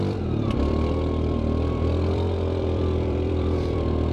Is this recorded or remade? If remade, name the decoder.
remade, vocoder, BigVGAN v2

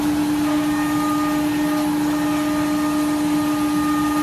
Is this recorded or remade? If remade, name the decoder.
recorded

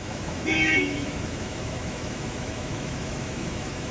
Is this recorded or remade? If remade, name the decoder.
remade, autoencoder, DAC-VAE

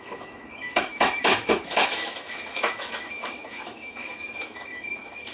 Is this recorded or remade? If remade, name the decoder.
remade, autoencoder, DAC-VAE